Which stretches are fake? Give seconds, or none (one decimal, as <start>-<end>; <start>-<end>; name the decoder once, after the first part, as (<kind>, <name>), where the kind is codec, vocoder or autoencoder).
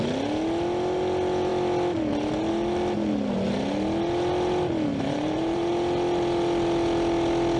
4.9-5.7 (vocoder, BigVGAN v2)